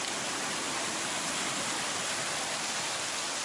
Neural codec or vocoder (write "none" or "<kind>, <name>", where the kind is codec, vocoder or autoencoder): vocoder, BigVGAN v2